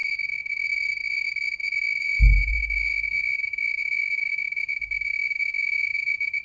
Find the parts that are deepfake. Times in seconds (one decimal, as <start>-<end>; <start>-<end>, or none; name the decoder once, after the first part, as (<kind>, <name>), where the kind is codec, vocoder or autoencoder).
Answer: 2.0-2.6 (vocoder, Vocos)